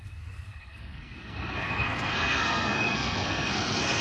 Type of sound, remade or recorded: remade